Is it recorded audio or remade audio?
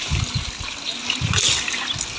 recorded